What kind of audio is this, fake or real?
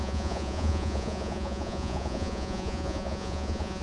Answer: fake